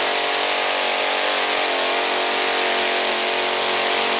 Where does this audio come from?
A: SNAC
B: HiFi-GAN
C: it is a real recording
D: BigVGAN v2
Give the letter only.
C